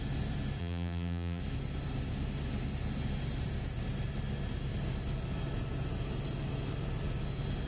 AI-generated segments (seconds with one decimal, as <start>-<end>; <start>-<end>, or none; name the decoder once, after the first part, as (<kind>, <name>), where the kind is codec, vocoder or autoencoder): 0.6-1.4 (vocoder, BigVGAN v2)